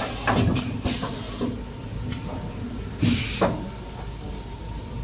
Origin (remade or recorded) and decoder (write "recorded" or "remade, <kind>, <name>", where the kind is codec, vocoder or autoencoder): recorded